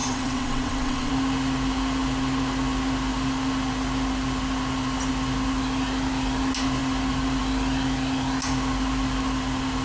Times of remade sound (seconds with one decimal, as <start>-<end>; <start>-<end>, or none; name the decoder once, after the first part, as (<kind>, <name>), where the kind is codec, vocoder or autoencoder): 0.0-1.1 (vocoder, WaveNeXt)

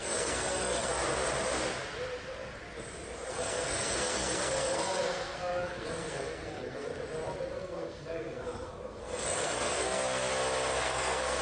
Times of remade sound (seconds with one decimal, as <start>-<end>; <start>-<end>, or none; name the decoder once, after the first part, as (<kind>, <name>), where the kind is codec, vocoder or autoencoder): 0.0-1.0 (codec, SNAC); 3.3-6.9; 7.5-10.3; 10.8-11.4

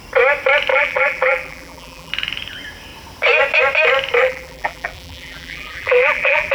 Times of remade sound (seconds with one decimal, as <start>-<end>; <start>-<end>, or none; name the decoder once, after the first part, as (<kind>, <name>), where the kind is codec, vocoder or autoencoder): 0.7-2.1 (vocoder, BigVGAN v2); 4.2-6.5

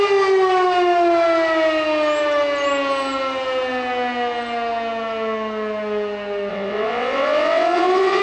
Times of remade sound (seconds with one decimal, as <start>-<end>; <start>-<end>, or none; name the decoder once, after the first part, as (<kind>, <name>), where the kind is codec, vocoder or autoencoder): 6.5-8.2 (vocoder, WaveNeXt)

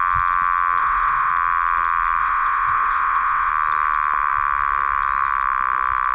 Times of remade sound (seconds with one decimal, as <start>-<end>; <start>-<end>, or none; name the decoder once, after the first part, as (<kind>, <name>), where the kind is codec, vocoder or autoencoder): 0.8-1.3 (vocoder, WaveNeXt); 2.2-3.5

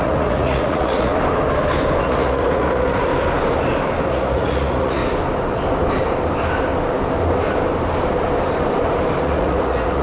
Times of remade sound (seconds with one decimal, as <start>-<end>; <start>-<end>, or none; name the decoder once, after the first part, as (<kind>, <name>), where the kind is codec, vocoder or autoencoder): 0.0-1.1 (vocoder, Vocos); 2.0-3.1; 4.1-5.0; 9.2-10.0

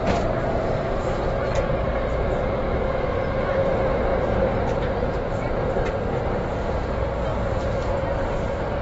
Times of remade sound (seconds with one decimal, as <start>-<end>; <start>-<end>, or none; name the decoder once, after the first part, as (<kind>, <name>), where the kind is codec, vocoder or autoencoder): 4.1-5.9 (vocoder, BigVGAN v2); 7.3-7.9